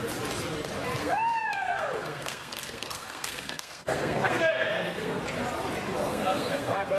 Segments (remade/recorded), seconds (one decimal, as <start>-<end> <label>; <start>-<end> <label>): 0.0-1.0 recorded; 1.0-5.2 remade; 5.2-6.0 recorded; 6.0-7.0 remade